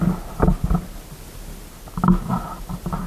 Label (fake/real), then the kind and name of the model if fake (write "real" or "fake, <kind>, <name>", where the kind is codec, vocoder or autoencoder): real